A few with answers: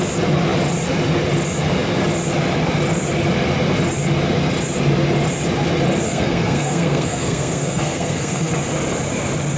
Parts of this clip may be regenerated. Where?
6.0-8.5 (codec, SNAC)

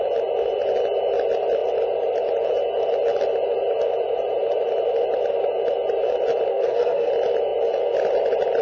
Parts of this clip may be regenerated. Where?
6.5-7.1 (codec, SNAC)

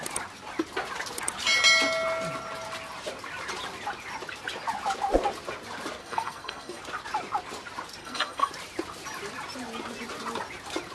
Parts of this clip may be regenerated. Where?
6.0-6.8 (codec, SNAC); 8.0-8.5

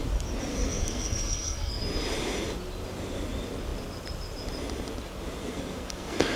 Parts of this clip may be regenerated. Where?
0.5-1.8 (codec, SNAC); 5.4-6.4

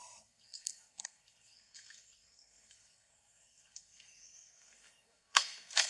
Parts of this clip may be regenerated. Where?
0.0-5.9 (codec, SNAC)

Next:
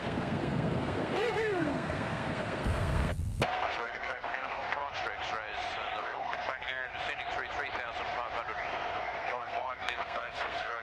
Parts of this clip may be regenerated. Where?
0.0-4.8 (codec, SNAC); 6.0-6.9; 8.9-10.8

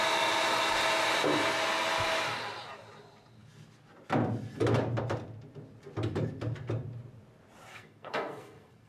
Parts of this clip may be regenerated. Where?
7.7-8.9 (codec, SNAC)

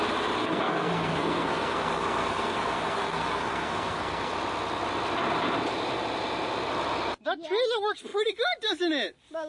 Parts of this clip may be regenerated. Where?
0.4-4.3 (codec, SNAC)